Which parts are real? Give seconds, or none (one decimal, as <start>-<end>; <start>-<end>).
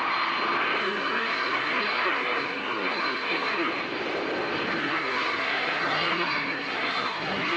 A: 0.0-0.8; 3.7-4.8